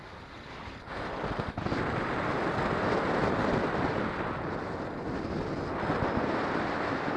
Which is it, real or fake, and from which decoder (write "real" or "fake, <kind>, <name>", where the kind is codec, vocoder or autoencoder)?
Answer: real